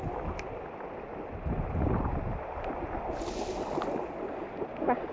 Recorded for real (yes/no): yes